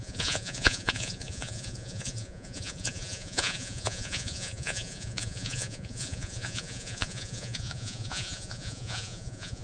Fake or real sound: fake